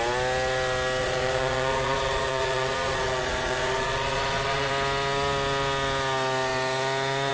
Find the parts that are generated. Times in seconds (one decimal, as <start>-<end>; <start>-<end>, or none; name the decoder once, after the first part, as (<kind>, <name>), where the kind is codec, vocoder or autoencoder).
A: 1.0-4.7 (vocoder, Vocos)